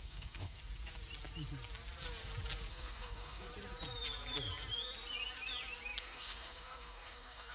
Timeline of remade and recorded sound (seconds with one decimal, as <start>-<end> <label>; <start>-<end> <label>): 0.0-0.6 remade; 0.6-2.7 recorded; 2.7-3.5 remade; 3.5-6.0 recorded; 6.0-7.5 remade